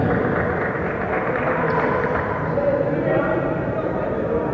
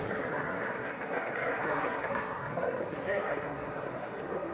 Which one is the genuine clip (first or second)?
first